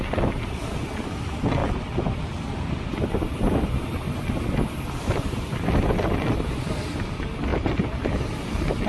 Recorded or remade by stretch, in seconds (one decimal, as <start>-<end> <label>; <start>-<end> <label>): 0.0-7.5 recorded; 7.5-8.1 remade; 8.1-8.9 recorded